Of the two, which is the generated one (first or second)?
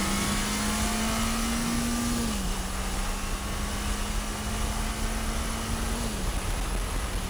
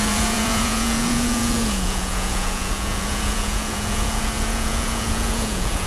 second